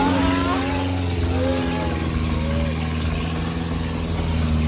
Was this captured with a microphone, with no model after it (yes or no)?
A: yes